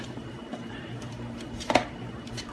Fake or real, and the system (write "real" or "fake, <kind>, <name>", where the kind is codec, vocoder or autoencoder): fake, vocoder, BigVGAN v2